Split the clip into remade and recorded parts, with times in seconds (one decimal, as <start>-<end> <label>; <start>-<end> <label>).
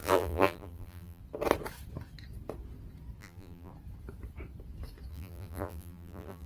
0.0-1.2 remade; 1.2-3.2 recorded; 3.2-3.7 remade; 3.7-5.1 recorded; 5.1-6.5 remade